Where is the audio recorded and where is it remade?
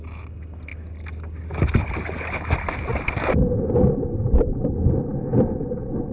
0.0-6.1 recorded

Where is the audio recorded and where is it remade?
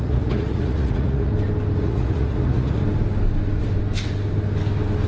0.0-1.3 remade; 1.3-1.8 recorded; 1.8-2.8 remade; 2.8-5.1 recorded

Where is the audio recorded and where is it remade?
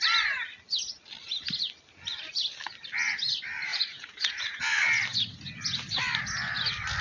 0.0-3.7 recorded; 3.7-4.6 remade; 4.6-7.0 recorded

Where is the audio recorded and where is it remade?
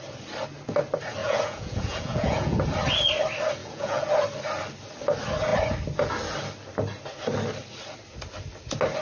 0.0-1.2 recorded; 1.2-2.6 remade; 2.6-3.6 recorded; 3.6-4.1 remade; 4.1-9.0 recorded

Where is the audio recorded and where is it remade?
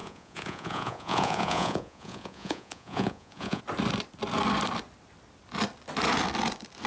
0.0-3.6 remade; 3.6-6.9 recorded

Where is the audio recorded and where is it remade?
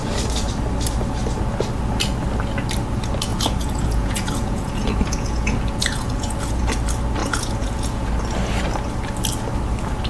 0.0-3.3 recorded; 3.3-6.6 remade; 6.6-7.2 recorded; 7.2-8.1 remade; 8.1-10.1 recorded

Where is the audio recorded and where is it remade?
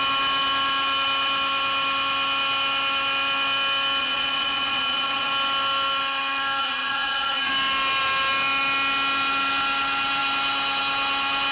0.0-4.0 recorded; 4.0-5.3 remade; 5.3-6.6 recorded; 6.6-7.5 remade; 7.5-11.5 recorded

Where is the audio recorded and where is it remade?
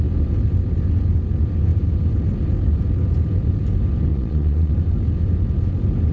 0.0-4.1 recorded; 4.1-4.7 remade; 4.7-6.1 recorded